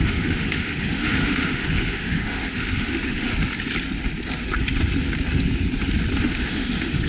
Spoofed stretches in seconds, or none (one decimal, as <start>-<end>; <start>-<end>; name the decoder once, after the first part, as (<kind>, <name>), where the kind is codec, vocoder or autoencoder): 0.0-3.3 (autoencoder, DAC-VAE); 6.2-7.1